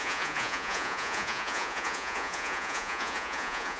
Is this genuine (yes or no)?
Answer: no